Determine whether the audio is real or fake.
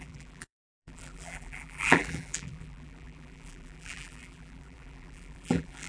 fake